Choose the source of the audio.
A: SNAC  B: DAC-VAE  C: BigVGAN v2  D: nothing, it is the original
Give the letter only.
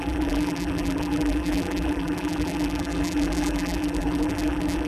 C